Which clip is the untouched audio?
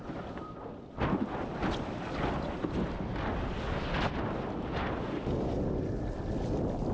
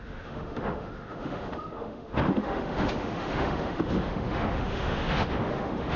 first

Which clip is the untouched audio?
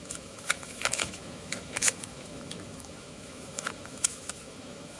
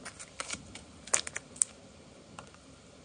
second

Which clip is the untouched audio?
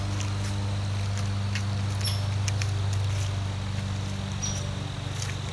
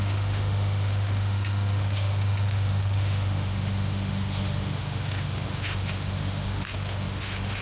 first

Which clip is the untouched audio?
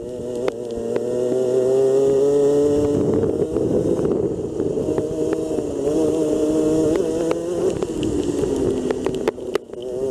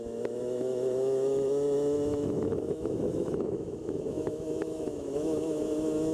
first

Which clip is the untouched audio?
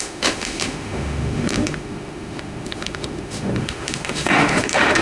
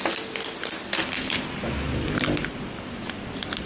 second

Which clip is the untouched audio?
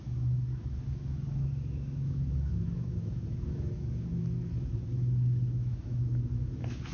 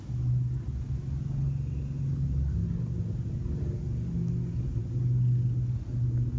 second